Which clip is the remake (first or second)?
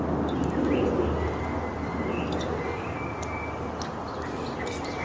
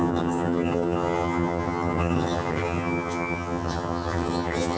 second